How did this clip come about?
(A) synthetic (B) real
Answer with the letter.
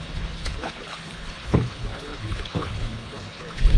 A